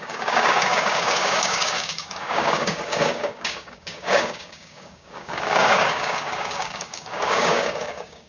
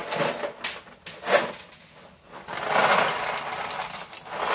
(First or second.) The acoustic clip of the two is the second